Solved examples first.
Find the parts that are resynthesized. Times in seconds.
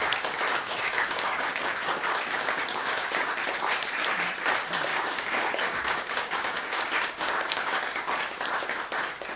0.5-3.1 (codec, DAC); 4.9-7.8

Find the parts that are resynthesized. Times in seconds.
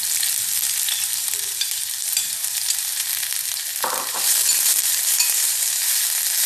1.1-3.1 (vocoder, BigVGAN v2); 3.7-6.0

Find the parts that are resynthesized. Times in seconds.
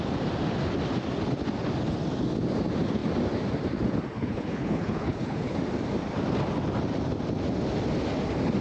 4.1-5.6 (codec, HILCodec)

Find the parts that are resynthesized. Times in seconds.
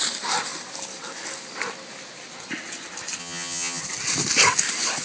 3.2-3.8 (vocoder, HiFi-GAN)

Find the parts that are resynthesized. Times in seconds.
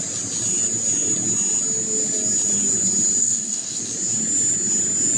3.2-3.8 (codec, SNAC)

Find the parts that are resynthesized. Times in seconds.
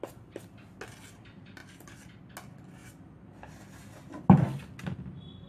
none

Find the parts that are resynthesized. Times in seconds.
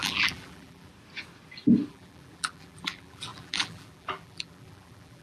0.0-0.9 (vocoder, BigVGAN v2); 1.9-5.2